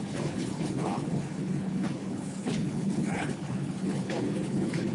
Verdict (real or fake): fake